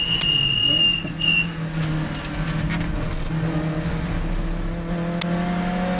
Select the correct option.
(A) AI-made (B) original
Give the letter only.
B